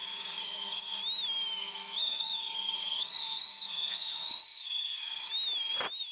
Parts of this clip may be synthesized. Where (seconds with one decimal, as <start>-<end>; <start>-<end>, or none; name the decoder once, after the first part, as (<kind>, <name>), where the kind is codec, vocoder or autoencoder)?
0.0-1.0 (codec, SNAC); 1.6-5.3